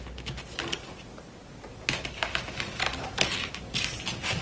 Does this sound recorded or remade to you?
recorded